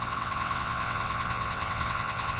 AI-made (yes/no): yes